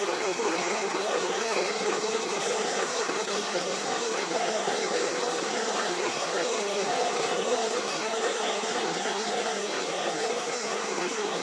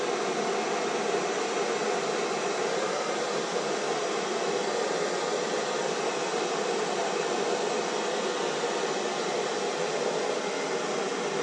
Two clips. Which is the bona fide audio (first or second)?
second